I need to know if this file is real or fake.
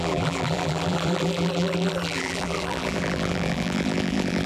fake